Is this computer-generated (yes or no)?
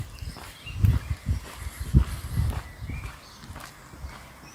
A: no